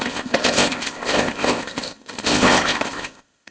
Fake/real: fake